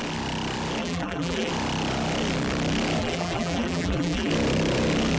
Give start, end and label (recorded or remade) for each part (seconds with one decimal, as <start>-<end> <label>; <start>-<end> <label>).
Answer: 0.0-0.8 recorded; 0.8-1.5 remade; 1.5-3.0 recorded; 3.0-4.3 remade; 4.3-5.2 recorded